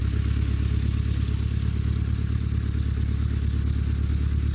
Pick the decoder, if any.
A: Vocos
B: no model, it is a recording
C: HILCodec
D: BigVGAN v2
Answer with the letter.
B